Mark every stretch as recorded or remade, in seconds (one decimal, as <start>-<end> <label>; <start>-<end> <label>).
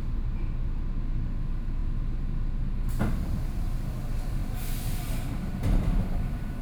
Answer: 0.0-6.6 recorded